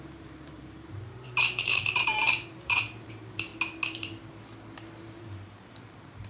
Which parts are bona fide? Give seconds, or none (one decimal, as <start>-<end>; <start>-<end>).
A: 3.5-5.0